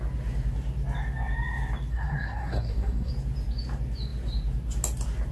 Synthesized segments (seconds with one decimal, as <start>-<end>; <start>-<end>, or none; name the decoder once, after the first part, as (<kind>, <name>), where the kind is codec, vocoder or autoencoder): 1.9-3.1 (codec, SNAC)